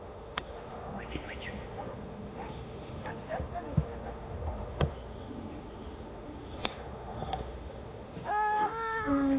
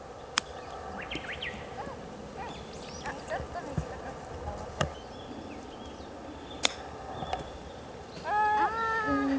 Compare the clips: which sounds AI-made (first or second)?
first